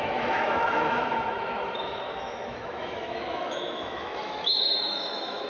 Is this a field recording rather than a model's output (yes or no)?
no